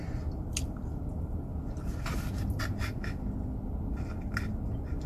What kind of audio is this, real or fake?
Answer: real